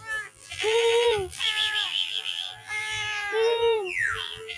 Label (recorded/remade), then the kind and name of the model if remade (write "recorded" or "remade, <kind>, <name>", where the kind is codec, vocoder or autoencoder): remade, vocoder, BigVGAN v2